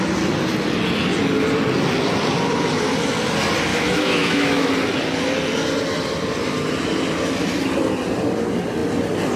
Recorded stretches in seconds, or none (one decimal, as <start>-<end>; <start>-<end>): 0.0-3.7; 4.7-9.4